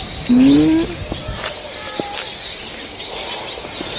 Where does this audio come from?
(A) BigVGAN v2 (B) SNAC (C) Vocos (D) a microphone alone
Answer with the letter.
D